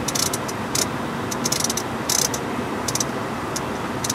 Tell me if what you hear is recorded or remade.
recorded